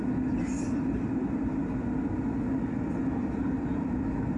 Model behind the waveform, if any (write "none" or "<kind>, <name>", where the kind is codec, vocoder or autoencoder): none